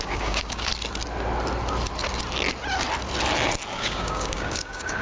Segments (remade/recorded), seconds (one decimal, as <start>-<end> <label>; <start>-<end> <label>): 0.0-0.7 remade; 0.7-3.7 recorded; 3.7-5.0 remade